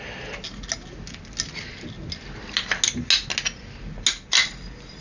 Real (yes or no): yes